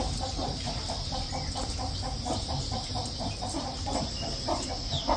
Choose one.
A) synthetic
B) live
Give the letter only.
B